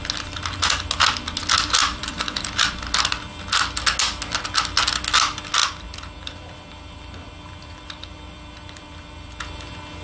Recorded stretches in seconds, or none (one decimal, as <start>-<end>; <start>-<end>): 0.0-1.8; 2.6-5.6; 9.4-10.0